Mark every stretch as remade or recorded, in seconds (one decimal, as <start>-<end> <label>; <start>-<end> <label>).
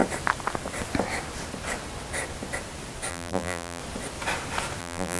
0.0-3.1 recorded; 3.1-3.8 remade; 3.8-4.8 recorded; 4.8-5.2 remade